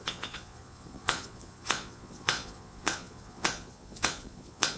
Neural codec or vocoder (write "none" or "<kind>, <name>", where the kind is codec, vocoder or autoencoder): vocoder, Vocos